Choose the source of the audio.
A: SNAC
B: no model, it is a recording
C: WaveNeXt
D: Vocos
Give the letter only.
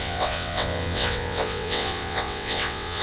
C